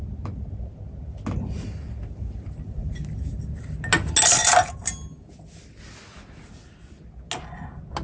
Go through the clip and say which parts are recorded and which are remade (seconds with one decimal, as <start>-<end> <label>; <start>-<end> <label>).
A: 0.0-4.4 recorded; 4.4-4.9 remade; 4.9-8.0 recorded